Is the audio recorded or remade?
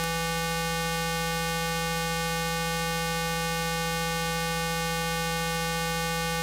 recorded